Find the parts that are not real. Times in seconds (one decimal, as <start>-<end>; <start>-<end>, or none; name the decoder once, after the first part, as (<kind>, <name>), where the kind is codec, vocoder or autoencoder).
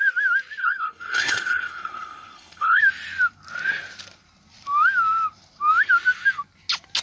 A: 0.6-2.8 (codec, HILCodec)